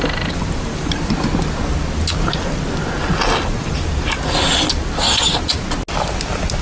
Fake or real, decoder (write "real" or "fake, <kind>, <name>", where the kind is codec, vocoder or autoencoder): real